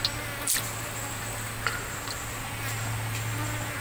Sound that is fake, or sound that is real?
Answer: real